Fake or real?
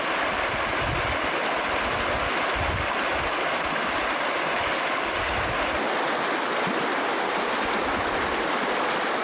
real